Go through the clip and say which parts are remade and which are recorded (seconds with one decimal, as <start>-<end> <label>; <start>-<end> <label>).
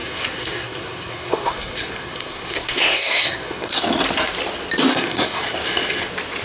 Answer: 0.0-3.8 remade; 3.8-4.9 recorded; 4.9-5.4 remade; 5.4-6.4 recorded